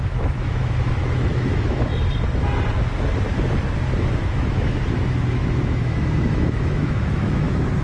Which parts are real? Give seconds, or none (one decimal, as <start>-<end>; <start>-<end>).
1.9-4.1